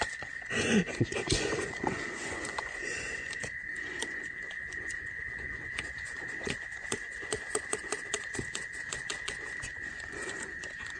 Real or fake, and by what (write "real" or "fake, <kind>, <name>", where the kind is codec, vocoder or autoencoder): fake, vocoder, Vocos